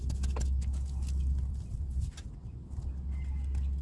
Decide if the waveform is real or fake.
real